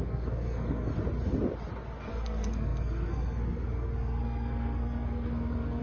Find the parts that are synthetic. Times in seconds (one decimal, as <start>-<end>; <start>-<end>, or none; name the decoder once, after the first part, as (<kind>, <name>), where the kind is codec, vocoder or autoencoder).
0.0-0.9 (codec, SNAC); 2.1-5.8